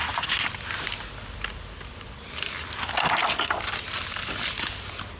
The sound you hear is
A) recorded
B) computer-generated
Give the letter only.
A